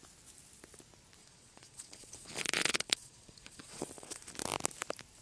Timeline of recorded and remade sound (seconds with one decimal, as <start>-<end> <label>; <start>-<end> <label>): 0.0-1.2 recorded; 1.2-4.3 remade; 4.3-5.2 recorded